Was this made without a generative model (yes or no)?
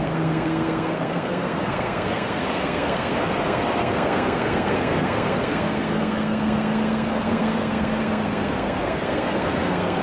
no